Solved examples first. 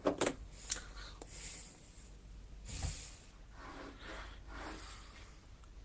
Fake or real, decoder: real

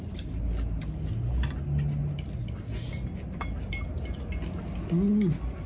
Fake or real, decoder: real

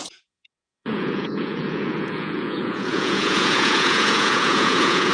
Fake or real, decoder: fake, vocoder, Vocos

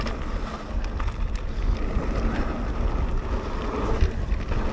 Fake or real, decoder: real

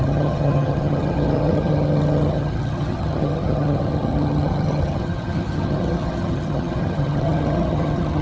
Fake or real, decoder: fake, vocoder, HiFi-GAN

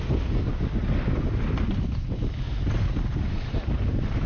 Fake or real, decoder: real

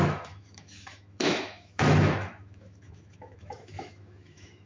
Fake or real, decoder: fake, autoencoder, DAC-VAE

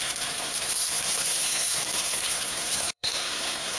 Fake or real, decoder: fake, codec, SNAC